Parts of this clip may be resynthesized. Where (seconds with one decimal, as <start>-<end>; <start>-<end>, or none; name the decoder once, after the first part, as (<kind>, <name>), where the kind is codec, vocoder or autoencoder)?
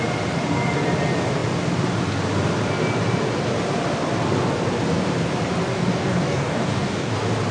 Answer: 5.7-7.1 (codec, DAC)